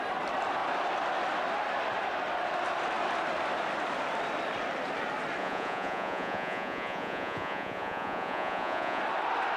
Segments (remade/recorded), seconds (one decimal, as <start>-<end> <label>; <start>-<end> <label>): 0.0-5.4 recorded; 5.4-9.0 remade; 9.0-9.6 recorded